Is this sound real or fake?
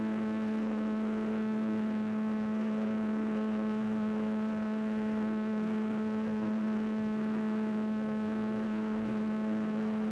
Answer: fake